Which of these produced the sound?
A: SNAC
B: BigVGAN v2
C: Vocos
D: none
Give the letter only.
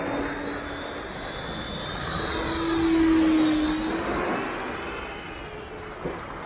D